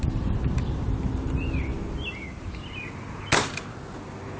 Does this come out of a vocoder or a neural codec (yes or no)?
no